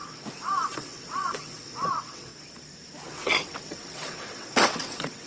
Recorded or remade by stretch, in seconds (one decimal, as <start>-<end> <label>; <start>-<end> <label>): 0.0-2.3 remade; 2.3-3.1 recorded; 3.1-5.3 remade